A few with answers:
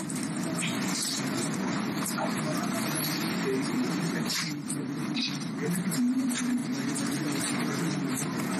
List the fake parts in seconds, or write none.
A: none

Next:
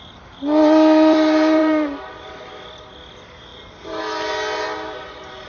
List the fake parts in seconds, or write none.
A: 1.6-2.3 (vocoder, BigVGAN v2); 3.5-4.0

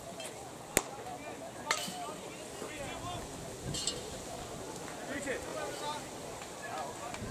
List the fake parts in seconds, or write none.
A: none

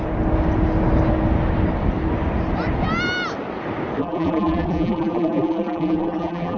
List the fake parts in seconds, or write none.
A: 4.0-6.6 (vocoder, BigVGAN v2)